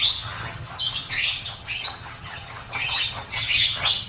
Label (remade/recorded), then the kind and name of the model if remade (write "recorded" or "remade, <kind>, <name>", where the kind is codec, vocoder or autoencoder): remade, vocoder, HiFi-GAN